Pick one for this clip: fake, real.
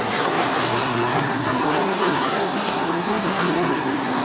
fake